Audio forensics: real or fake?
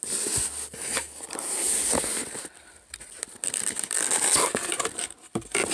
real